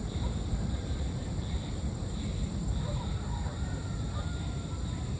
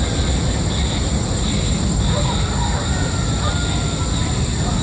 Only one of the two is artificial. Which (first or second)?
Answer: first